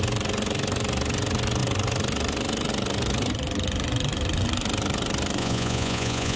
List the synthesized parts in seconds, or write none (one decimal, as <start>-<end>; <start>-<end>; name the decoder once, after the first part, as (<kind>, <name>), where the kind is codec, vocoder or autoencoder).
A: 5.4-6.4 (vocoder, Vocos)